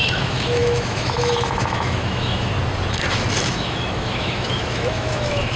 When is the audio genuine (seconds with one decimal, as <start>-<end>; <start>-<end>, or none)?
2.5-3.4